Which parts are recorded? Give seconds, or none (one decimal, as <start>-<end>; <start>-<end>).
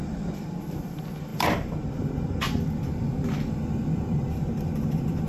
0.0-5.3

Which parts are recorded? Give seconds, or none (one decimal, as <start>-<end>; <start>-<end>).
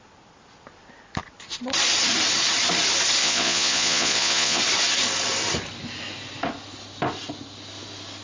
0.0-3.2; 4.6-8.2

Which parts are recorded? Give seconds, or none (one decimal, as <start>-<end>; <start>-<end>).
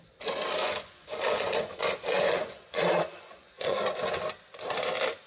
0.0-0.6; 3.8-5.3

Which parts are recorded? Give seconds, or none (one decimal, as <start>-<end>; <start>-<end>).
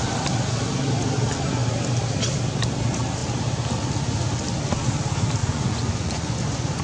0.0-5.4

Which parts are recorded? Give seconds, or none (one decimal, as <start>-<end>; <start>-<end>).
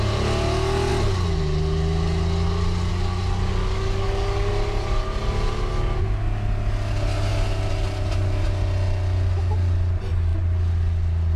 0.0-3.6; 4.5-11.4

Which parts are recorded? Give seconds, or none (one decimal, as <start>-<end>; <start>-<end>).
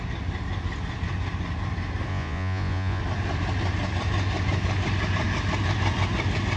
0.0-2.1; 3.0-6.6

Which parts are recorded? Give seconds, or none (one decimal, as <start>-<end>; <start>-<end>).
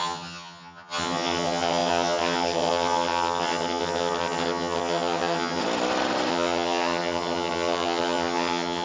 5.6-6.3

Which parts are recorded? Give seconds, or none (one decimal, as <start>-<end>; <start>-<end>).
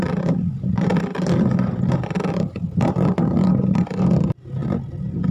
0.0-5.3